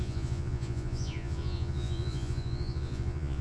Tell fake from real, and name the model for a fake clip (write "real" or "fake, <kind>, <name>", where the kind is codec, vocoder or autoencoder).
fake, vocoder, Vocos